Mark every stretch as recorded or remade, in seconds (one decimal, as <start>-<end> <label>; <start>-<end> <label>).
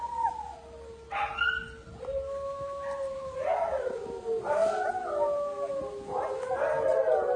0.0-7.4 recorded